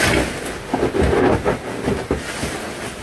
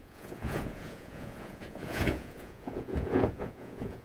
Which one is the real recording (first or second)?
first